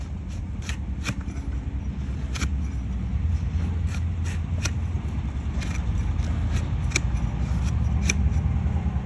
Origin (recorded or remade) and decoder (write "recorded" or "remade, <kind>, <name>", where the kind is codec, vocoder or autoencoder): recorded